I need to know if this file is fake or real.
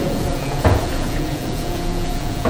fake